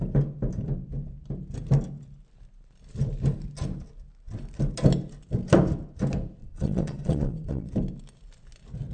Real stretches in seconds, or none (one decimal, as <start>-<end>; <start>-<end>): 0.0-6.4; 7.7-8.9